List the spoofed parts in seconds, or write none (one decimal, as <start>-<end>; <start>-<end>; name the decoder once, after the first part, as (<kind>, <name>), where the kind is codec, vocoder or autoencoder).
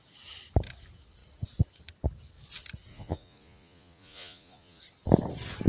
2.9-4.8 (vocoder, Vocos)